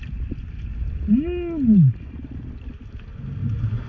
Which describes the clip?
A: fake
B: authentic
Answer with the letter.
B